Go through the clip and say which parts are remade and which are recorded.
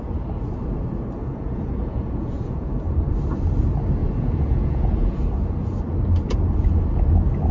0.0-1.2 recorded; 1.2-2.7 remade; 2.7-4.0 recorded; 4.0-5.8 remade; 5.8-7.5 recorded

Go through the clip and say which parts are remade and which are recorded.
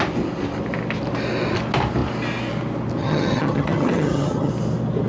0.0-3.0 recorded; 3.0-4.5 remade; 4.5-5.1 recorded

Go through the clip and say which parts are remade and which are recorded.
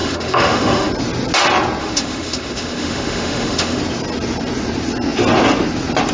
0.0-0.9 remade; 0.9-1.8 recorded; 1.8-3.8 remade; 3.8-6.1 recorded